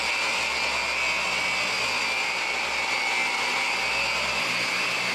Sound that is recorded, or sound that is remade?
recorded